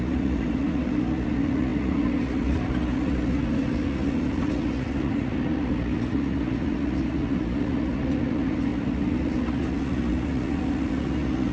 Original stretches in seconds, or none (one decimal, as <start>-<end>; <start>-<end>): none